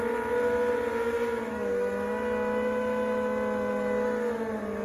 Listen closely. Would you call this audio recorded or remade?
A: recorded